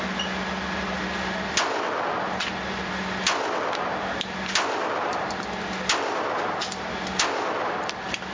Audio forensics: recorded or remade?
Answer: recorded